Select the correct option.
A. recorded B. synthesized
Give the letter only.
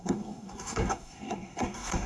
B